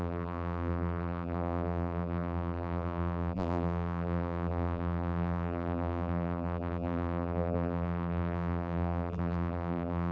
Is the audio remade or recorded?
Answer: remade